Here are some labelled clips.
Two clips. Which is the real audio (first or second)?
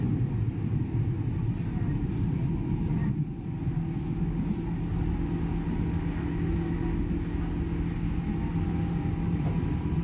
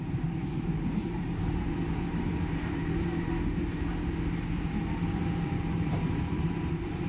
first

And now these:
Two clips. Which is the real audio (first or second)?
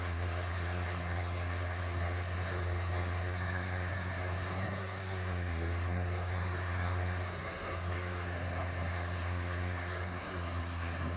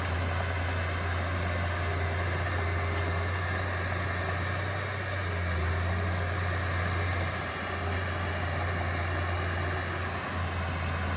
second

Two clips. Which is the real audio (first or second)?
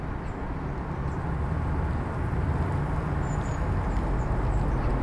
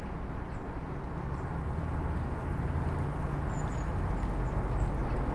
second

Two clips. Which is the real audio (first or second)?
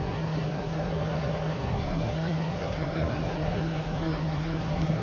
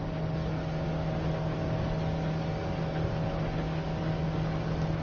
second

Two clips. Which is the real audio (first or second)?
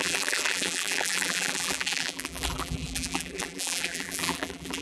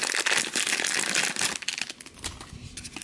second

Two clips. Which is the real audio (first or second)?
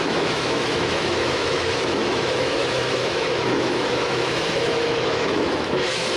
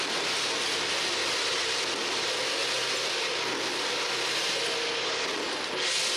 second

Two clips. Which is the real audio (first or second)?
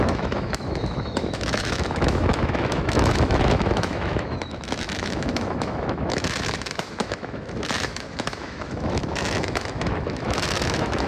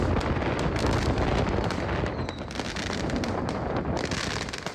second